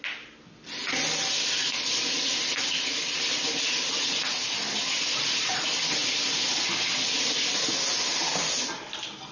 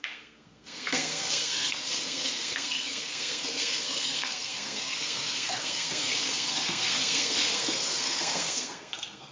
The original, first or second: first